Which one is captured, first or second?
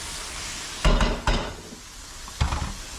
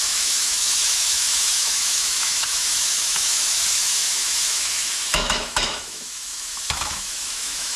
first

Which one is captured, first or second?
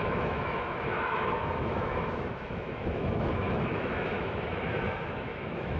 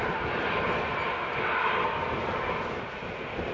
second